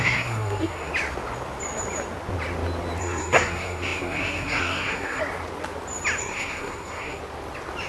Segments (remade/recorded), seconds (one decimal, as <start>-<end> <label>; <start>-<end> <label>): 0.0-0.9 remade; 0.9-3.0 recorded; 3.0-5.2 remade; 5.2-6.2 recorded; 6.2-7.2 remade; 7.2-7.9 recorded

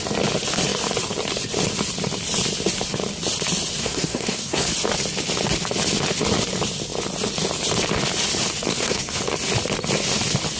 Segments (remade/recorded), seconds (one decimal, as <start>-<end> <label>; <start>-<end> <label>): 0.0-3.8 recorded; 3.8-4.7 remade; 4.7-8.7 recorded; 8.7-9.2 remade; 9.2-10.6 recorded

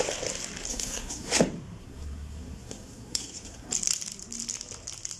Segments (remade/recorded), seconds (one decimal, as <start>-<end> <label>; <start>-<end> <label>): 0.0-0.7 recorded; 0.7-1.4 remade; 1.4-1.8 recorded; 1.8-3.7 remade; 3.7-5.2 recorded